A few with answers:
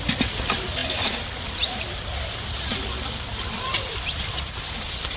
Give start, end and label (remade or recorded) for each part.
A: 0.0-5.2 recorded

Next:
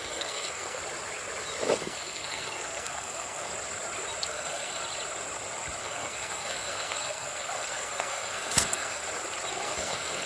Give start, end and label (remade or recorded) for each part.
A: 0.0-0.8 remade; 0.8-1.8 recorded; 1.8-3.5 remade; 3.5-4.3 recorded; 4.3-4.8 remade; 4.8-5.8 recorded; 5.8-9.0 remade; 9.0-9.5 recorded; 9.5-10.3 remade

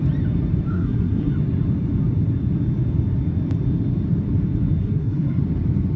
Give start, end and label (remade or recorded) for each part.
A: 0.0-0.7 recorded; 0.7-1.3 remade; 1.3-4.8 recorded; 4.8-5.4 remade; 5.4-6.0 recorded

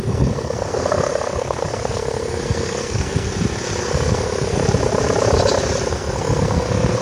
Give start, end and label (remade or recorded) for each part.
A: 0.0-3.3 remade; 3.3-3.8 recorded; 3.8-4.6 remade; 4.6-5.9 recorded; 5.9-7.0 remade

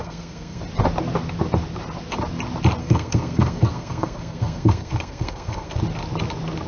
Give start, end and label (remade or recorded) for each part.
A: 0.0-0.6 remade; 0.6-2.8 recorded; 2.8-5.8 remade; 5.8-6.7 recorded

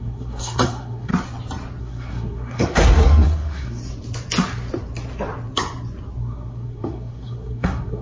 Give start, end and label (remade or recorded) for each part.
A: 0.0-1.1 remade; 1.1-1.8 recorded; 1.8-3.8 remade; 3.8-6.2 recorded; 6.2-8.0 remade

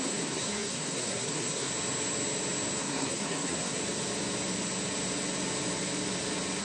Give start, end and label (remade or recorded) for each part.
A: 0.0-1.7 remade; 1.7-2.8 recorded; 2.8-3.8 remade; 3.8-6.6 recorded

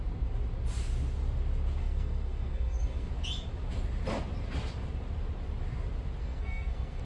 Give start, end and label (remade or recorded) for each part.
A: 0.0-1.8 recorded; 1.8-3.1 remade; 3.1-6.2 recorded; 6.2-7.0 remade